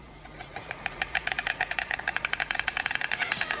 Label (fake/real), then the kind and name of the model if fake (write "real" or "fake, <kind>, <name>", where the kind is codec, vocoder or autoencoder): fake, vocoder, Vocos